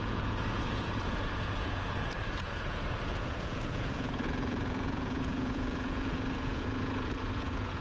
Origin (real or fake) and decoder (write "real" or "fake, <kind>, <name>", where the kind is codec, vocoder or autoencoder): fake, vocoder, Vocos